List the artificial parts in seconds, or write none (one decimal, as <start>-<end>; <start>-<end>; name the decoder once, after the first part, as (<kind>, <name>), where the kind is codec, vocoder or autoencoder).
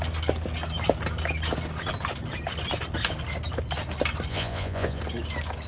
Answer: 4.3-5.0 (vocoder, Vocos)